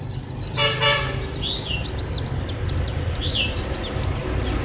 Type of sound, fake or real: real